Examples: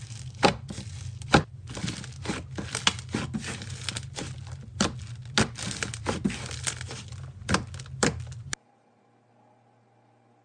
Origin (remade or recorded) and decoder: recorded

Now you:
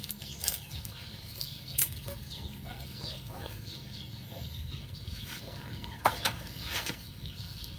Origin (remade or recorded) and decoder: remade, codec, SNAC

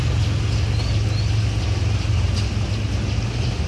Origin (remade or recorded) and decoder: recorded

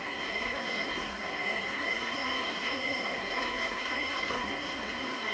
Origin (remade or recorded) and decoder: remade, codec, SNAC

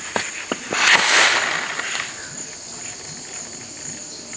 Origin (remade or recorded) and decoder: recorded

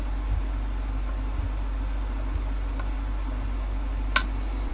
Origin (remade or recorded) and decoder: recorded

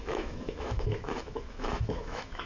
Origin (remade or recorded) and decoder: remade, autoencoder, DAC-VAE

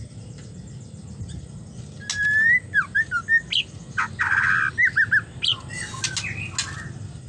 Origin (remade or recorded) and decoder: recorded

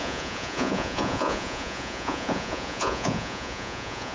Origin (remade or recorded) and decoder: remade, vocoder, Vocos